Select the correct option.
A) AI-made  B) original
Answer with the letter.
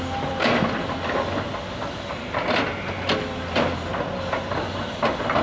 B